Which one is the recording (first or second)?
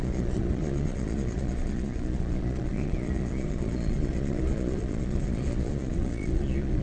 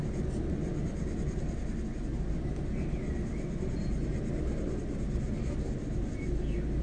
second